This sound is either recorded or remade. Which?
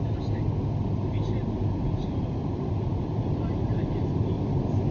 recorded